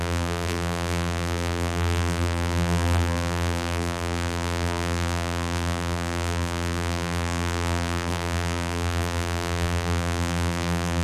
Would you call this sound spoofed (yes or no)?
yes